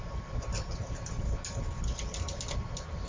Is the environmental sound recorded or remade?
recorded